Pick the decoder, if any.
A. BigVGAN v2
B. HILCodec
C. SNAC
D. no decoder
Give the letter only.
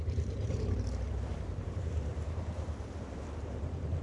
A